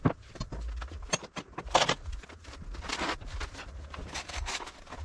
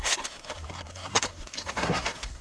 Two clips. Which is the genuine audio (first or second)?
first